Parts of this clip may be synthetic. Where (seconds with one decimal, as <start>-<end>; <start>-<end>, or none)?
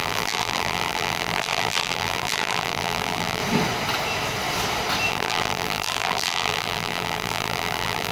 0.0-3.4; 5.1-8.1